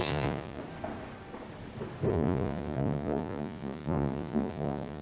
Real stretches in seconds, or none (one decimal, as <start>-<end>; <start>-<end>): 0.6-2.1